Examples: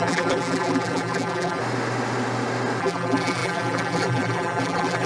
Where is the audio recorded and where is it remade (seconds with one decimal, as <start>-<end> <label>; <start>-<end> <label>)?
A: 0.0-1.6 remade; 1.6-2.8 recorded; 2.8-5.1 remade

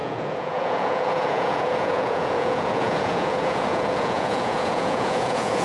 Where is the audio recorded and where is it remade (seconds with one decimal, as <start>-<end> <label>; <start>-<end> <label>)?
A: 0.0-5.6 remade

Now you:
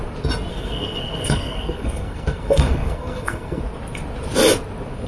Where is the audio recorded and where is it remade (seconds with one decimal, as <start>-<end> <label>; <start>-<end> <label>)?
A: 0.0-0.5 recorded; 0.5-3.6 remade; 3.6-5.1 recorded

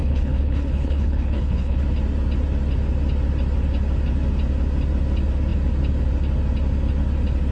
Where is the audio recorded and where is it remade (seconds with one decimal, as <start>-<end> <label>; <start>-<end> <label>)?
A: 0.0-1.8 remade; 1.8-7.5 recorded

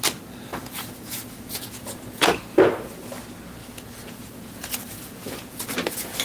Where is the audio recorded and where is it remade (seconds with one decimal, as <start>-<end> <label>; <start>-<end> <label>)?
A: 0.0-0.5 recorded; 0.5-2.4 remade; 2.4-3.6 recorded; 3.6-5.6 remade; 5.6-6.2 recorded